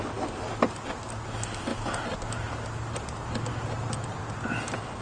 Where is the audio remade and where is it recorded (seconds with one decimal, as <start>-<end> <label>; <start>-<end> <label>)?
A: 0.0-5.0 recorded